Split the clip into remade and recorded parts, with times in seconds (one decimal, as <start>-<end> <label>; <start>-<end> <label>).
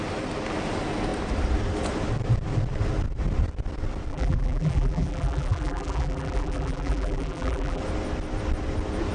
0.0-4.1 recorded; 4.1-7.8 remade; 7.8-9.1 recorded